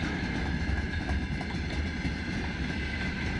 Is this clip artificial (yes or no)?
no